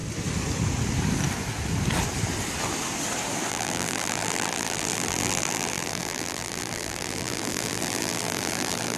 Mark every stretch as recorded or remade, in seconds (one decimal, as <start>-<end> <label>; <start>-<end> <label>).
0.0-3.5 recorded; 3.5-9.0 remade